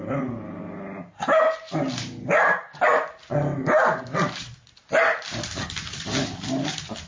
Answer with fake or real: real